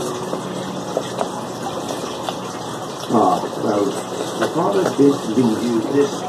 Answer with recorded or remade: recorded